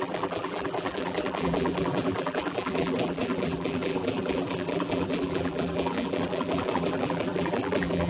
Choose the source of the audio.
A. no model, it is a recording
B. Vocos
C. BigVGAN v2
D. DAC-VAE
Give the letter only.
C